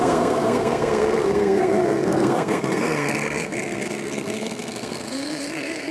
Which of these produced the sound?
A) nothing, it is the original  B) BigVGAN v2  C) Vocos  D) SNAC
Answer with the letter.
D